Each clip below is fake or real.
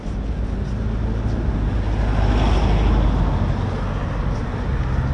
real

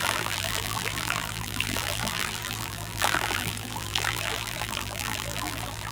fake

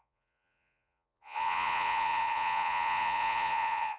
fake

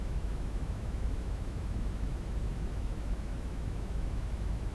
fake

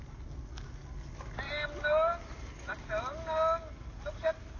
real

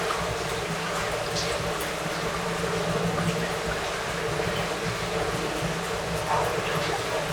real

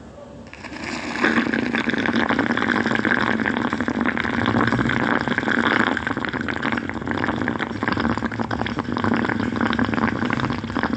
real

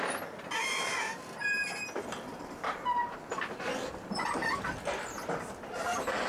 real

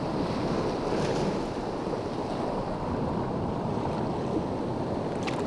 real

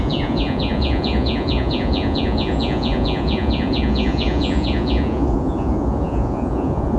fake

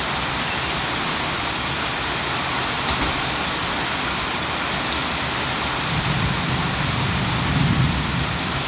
real